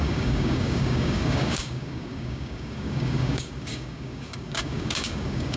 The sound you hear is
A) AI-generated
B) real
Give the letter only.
A